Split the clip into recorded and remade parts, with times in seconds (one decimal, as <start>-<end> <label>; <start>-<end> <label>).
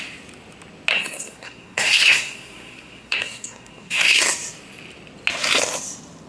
0.0-0.9 recorded; 0.9-4.2 remade; 4.2-6.3 recorded